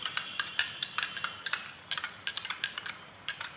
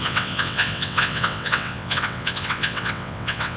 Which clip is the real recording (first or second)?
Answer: first